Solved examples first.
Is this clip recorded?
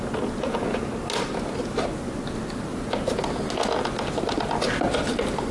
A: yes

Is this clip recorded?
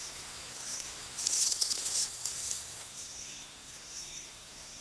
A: no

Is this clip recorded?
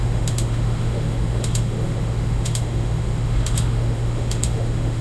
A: no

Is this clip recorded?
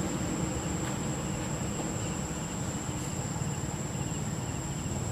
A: yes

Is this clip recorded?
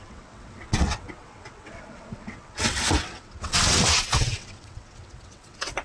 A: no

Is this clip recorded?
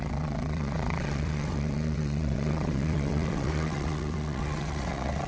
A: no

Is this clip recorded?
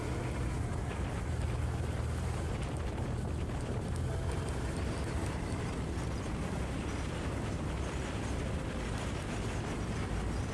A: yes